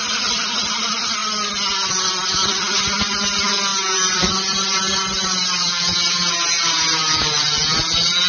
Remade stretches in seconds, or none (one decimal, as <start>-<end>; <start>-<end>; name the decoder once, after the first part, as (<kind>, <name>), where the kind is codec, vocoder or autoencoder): 3.7-4.3 (vocoder, BigVGAN v2); 4.9-5.7